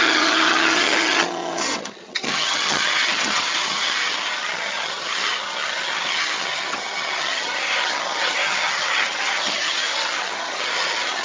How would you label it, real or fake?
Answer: fake